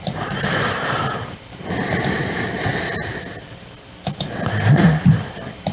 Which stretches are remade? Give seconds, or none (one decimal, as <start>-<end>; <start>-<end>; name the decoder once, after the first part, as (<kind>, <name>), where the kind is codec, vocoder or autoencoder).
0.0-2.7 (vocoder, BigVGAN v2); 4.8-5.7